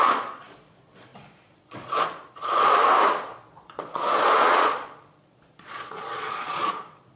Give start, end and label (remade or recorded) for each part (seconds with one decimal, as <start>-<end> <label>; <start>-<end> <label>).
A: 0.0-2.8 remade; 2.8-3.5 recorded; 3.5-7.2 remade